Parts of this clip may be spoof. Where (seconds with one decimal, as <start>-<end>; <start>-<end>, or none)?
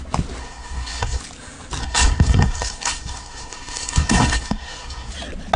0.4-1.2; 1.8-5.1